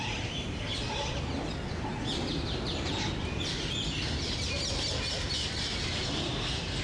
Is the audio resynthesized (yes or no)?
no